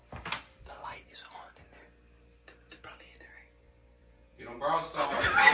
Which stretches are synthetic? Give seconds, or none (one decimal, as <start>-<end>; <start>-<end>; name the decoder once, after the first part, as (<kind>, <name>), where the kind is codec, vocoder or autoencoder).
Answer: 4.0-4.6 (vocoder, Vocos)